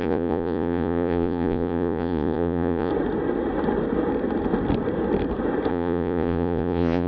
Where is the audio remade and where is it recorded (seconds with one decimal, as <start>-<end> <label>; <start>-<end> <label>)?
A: 0.0-2.9 remade; 2.9-5.7 recorded; 5.7-7.1 remade